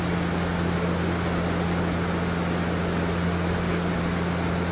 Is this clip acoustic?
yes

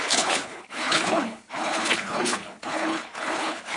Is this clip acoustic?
no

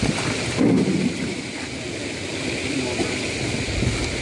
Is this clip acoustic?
yes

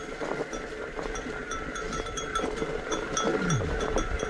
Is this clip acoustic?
yes